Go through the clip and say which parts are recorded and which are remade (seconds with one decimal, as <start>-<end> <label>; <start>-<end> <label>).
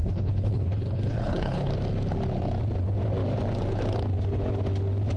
0.0-1.7 remade; 1.7-5.2 recorded